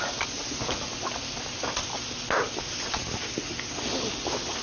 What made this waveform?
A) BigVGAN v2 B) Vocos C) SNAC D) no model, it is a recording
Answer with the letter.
D